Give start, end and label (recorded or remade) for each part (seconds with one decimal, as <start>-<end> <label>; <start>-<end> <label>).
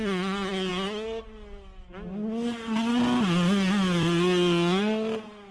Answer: 0.0-5.5 recorded